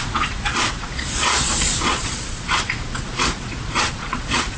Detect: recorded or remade remade